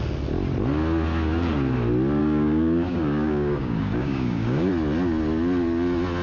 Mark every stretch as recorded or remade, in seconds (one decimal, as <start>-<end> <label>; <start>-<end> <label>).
0.0-2.2 recorded; 2.2-4.7 remade; 4.7-6.2 recorded